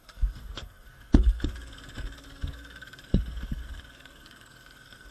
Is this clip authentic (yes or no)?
no